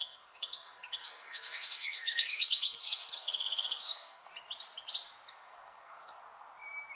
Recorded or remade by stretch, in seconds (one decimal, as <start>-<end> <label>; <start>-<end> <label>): 0.0-4.3 remade; 4.3-5.3 recorded; 5.3-6.2 remade; 6.2-7.0 recorded